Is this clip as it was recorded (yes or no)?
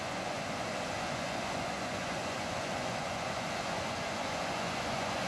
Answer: no